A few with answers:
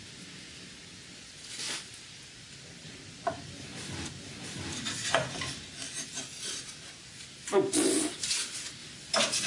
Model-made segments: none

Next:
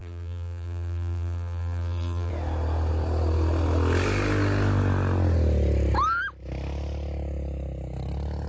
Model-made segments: 0.0-2.3 (vocoder, BigVGAN v2)

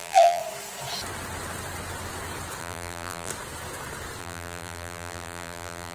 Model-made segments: 0.0-0.4 (vocoder, BigVGAN v2); 2.6-3.3; 4.2-5.9

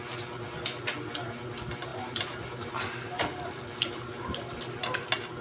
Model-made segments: 1.9-3.6 (vocoder, BigVGAN v2)

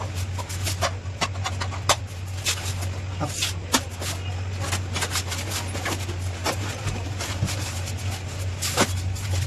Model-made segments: 6.4-8.0 (vocoder, BigVGAN v2)

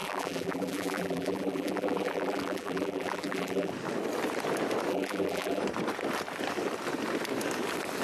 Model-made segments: 0.0-3.7 (vocoder, BigVGAN v2); 4.9-5.6